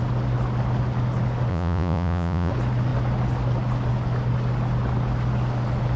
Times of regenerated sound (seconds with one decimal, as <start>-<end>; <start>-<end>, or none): 1.5-2.5